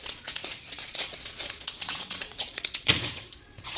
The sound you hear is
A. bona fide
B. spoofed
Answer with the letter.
B